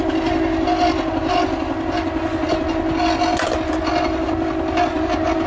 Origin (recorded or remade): recorded